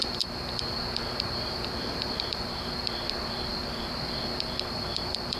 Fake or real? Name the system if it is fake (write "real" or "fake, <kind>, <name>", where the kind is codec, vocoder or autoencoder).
fake, vocoder, BigVGAN v2